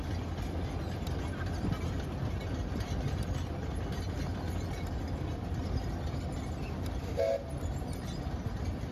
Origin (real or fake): real